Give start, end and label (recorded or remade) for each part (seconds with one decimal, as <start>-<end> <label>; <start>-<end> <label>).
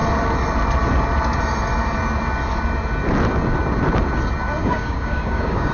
0.0-4.6 recorded; 4.6-5.7 remade